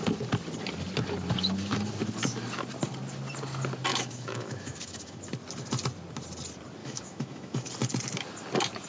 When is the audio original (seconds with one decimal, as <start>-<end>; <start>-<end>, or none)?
0.0-3.9; 5.2-6.8; 7.7-8.9